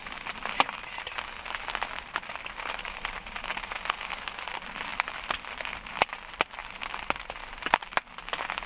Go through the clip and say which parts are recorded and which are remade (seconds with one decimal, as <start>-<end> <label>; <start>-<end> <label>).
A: 0.0-6.6 recorded; 6.6-7.9 remade; 7.9-8.7 recorded